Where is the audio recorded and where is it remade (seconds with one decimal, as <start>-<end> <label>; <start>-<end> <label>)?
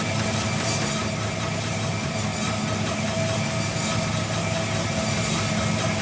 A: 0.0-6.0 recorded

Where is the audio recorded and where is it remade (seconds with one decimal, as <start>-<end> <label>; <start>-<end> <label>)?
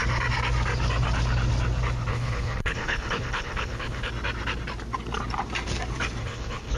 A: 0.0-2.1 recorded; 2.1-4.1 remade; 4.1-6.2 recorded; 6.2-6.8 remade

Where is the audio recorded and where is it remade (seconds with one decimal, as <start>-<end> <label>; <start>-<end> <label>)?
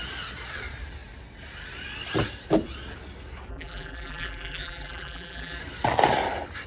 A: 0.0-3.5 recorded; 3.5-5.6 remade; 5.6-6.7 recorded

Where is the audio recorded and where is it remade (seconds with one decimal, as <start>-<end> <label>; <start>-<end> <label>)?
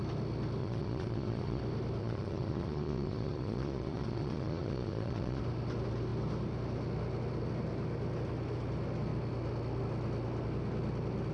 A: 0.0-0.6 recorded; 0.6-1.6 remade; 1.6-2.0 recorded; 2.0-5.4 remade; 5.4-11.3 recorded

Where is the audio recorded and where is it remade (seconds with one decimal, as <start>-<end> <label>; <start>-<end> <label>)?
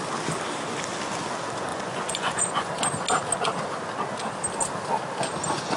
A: 0.0-1.7 recorded; 1.7-2.7 remade; 2.7-5.8 recorded